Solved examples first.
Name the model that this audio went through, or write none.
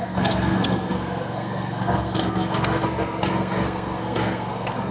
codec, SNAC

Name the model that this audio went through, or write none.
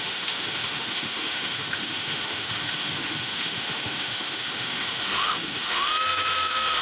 autoencoder, DAC-VAE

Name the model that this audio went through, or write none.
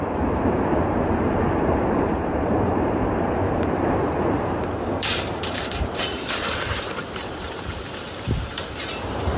vocoder, BigVGAN v2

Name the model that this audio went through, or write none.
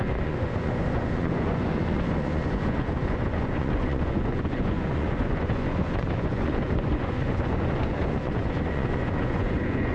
vocoder, Vocos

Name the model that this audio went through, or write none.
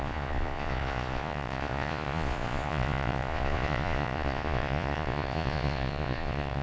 vocoder, Vocos